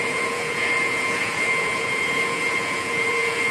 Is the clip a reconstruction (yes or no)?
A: yes